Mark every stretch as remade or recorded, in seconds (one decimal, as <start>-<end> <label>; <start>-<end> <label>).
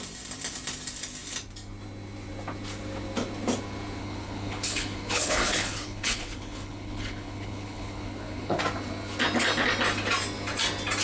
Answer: 0.0-4.0 recorded; 4.0-8.6 remade; 8.6-11.0 recorded